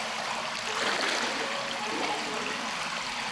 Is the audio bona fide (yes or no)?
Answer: yes